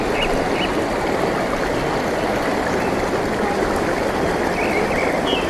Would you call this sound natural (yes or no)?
yes